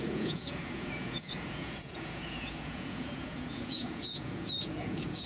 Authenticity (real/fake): fake